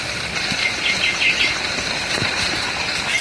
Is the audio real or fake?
real